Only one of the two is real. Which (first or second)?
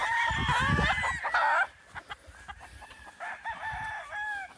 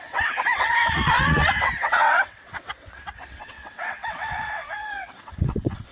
first